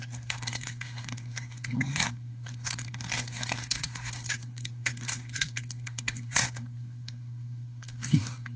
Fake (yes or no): yes